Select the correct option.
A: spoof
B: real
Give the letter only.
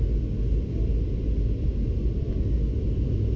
B